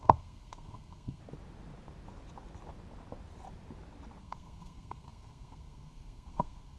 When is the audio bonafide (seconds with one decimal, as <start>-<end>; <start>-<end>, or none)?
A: 1.2-4.2

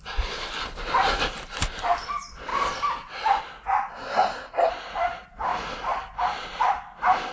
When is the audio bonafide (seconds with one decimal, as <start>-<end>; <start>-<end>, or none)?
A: 0.0-3.9; 4.7-7.3

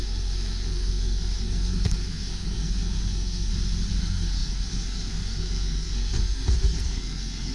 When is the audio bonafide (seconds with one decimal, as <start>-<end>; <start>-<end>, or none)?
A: 3.5-4.0

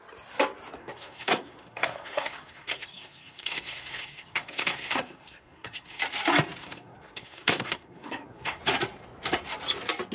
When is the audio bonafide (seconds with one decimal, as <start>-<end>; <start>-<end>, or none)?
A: 0.0-0.8; 6.0-6.6; 8.6-10.1